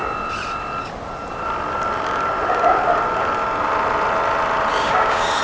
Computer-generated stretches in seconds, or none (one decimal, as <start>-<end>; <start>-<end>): 4.7-5.4